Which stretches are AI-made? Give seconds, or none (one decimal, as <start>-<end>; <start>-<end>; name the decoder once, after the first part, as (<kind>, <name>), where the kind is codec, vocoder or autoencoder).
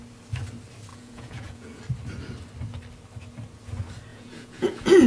0.9-1.8 (vocoder, Vocos); 4.1-5.1